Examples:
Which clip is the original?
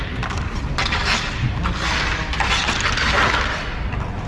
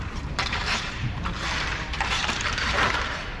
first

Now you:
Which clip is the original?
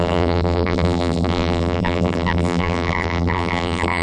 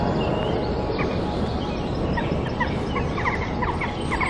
second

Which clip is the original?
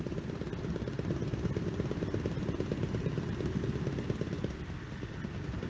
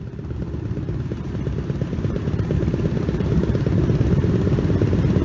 first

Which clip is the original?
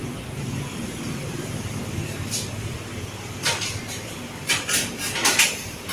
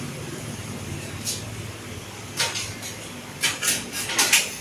second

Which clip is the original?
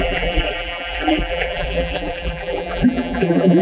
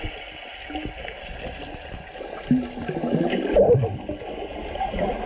second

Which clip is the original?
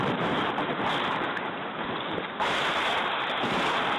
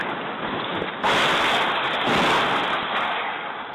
second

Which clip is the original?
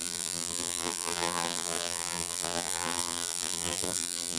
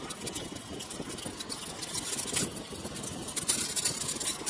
second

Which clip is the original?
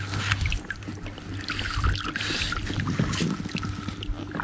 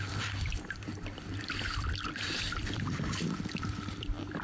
first